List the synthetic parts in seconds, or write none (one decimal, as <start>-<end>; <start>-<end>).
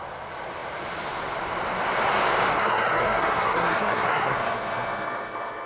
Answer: 2.5-5.7